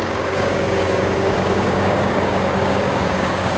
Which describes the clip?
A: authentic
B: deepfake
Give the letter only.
B